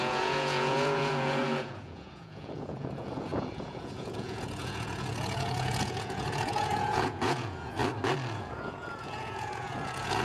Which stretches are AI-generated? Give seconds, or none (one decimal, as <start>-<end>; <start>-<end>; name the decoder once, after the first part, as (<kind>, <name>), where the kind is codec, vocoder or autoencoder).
0.0-7.8 (vocoder, Vocos); 8.4-10.2